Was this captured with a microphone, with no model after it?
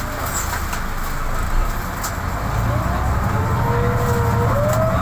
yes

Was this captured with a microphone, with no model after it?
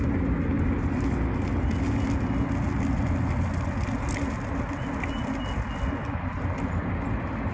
yes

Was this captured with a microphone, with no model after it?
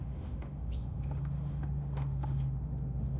no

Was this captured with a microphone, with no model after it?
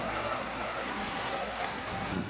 no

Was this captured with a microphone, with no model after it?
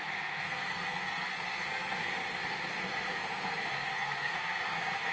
no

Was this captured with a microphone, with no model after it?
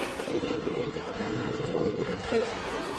no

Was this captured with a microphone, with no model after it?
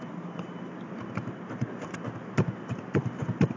yes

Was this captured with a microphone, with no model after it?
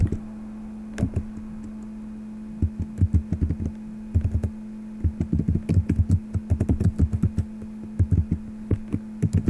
yes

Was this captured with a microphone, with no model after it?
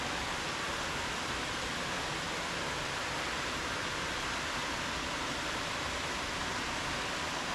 yes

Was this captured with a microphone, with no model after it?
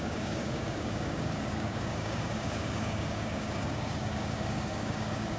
no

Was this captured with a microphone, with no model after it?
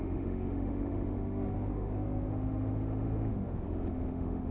no